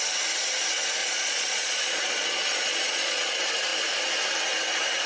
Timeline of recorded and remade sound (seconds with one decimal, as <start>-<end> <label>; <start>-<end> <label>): 0.0-1.0 recorded; 1.0-3.3 remade; 3.3-5.1 recorded